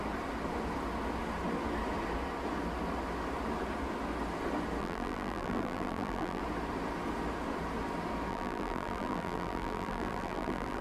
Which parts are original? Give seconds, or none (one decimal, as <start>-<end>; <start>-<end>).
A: 0.0-4.8; 6.4-8.3